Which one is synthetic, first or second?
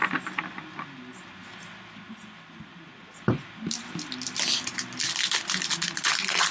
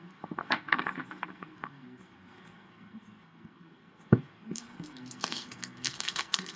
second